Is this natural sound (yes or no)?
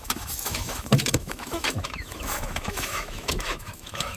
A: no